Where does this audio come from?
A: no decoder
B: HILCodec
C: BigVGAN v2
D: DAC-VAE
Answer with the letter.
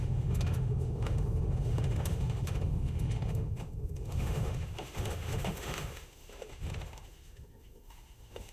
D